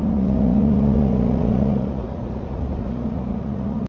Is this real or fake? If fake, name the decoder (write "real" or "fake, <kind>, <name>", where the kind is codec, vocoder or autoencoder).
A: fake, vocoder, Vocos